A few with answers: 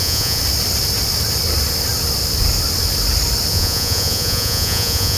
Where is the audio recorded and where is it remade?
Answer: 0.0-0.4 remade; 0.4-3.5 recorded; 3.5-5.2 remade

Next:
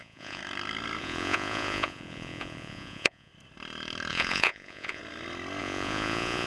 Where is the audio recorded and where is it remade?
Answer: 0.0-0.4 remade; 0.4-1.0 recorded; 1.0-3.3 remade; 3.3-4.1 recorded; 4.1-5.0 remade; 5.0-5.6 recorded; 5.6-6.5 remade